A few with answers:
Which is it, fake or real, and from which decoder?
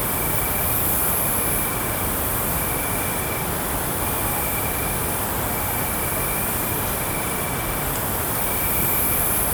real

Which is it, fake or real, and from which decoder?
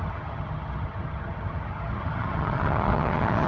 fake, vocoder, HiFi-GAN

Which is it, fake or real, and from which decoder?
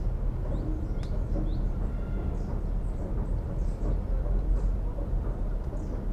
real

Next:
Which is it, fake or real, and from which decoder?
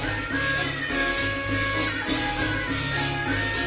real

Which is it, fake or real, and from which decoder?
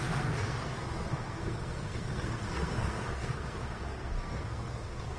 fake, codec, SNAC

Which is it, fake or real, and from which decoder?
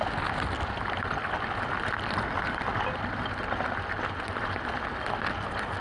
real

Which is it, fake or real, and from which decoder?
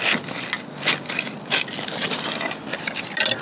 real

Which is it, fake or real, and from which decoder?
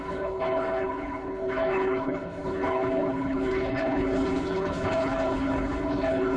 fake, codec, HILCodec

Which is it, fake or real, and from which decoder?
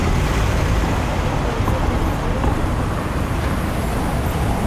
real